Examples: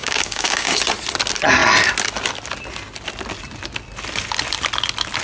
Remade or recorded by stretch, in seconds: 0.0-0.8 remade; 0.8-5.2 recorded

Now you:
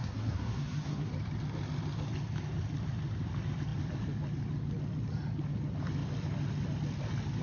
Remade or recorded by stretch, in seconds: 0.0-1.1 remade; 1.1-7.4 recorded

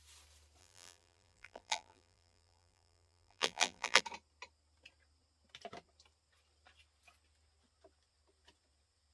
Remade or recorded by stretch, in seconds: 0.0-0.6 recorded; 0.6-4.0 remade; 4.0-9.1 recorded

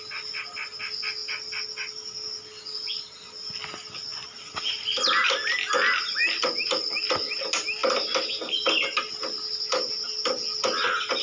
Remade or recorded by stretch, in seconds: 0.0-11.2 recorded

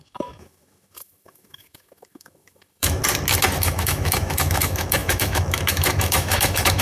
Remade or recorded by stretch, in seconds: 0.0-3.0 remade; 3.0-3.6 recorded; 3.6-6.8 remade